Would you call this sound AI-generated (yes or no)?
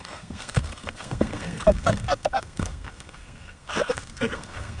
yes